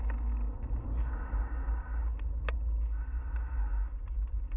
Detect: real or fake real